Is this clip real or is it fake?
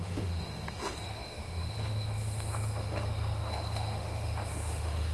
fake